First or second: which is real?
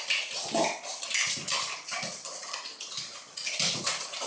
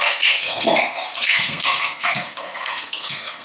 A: first